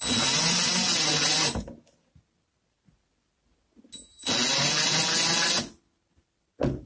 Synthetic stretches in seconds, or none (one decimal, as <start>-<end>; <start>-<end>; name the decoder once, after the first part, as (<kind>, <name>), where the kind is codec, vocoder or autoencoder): none